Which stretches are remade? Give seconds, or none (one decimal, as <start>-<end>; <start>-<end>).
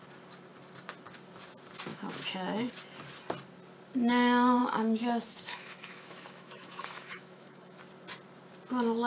1.9-2.7; 4.6-7.8